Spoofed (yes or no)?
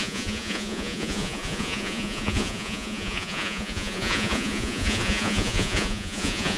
yes